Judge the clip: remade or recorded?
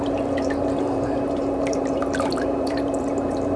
remade